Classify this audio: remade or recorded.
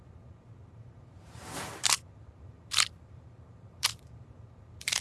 remade